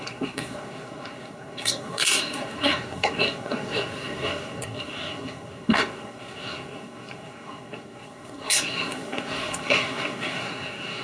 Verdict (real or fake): fake